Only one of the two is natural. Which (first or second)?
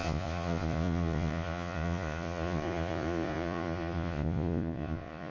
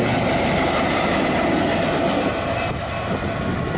second